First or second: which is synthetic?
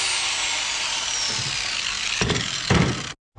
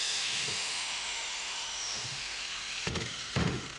second